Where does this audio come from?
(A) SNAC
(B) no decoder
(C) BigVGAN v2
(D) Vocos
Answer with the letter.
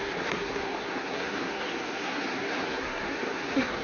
A